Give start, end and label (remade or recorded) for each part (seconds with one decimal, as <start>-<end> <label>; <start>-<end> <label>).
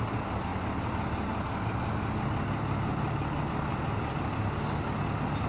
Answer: 0.0-5.5 recorded